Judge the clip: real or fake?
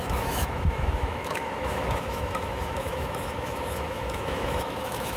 fake